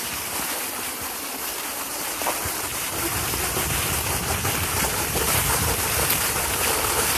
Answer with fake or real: fake